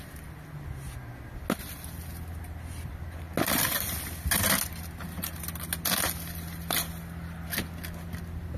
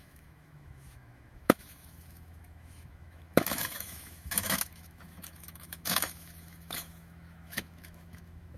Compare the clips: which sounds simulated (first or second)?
second